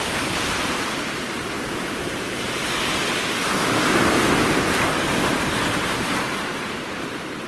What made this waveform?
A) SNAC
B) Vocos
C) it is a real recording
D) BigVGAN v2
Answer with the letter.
D